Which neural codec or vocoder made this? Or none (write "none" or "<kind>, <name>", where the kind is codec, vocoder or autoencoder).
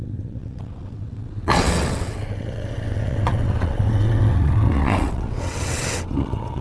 vocoder, WaveNeXt